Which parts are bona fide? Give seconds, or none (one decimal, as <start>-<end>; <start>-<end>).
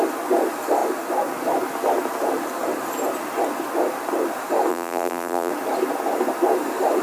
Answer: 0.0-4.7; 5.5-7.0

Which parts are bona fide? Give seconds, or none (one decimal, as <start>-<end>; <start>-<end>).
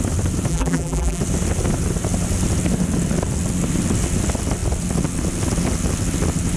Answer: 0.0-0.5; 1.2-6.6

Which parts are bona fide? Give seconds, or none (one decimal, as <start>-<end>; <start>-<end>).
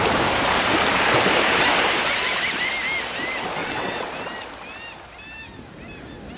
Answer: 0.0-3.6; 4.1-6.4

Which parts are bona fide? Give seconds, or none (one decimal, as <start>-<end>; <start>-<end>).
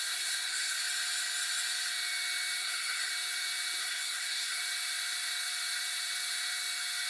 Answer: 0.8-2.6; 3.1-3.8; 4.6-7.1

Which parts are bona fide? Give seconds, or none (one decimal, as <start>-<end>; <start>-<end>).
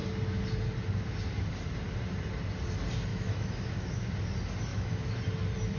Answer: 0.0-3.1; 4.1-4.7; 5.2-5.8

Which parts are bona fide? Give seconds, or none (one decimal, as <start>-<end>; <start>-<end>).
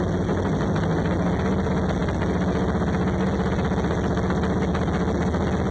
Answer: 0.0-5.7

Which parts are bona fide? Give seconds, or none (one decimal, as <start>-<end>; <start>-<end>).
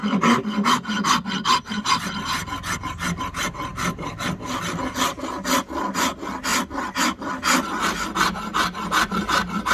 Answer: 0.0-9.7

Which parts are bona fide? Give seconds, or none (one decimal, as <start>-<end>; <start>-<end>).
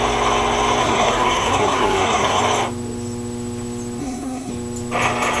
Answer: 0.0-0.8; 2.4-4.0; 4.5-5.4